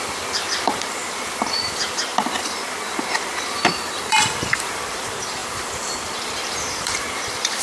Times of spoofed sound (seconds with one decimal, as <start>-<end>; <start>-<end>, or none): 0.0-7.6